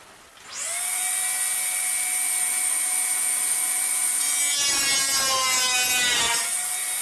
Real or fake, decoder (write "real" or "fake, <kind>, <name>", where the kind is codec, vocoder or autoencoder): real